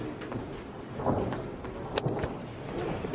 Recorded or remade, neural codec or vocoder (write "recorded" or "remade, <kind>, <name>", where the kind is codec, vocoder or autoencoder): recorded